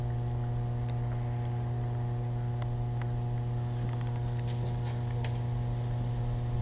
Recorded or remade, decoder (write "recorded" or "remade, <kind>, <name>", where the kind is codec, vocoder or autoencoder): recorded